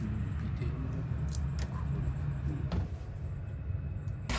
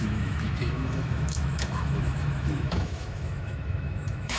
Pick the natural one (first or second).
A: first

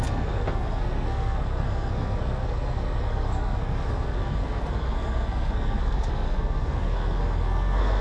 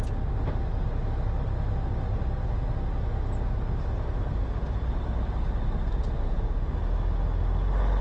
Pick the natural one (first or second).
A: second